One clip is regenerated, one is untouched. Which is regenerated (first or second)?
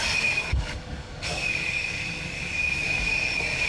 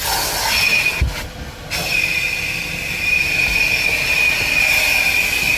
first